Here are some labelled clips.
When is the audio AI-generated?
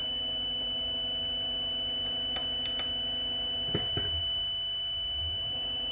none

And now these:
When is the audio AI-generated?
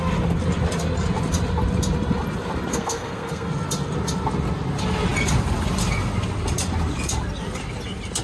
2.7-3.5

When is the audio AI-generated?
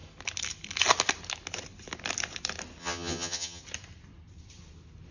2.8-3.6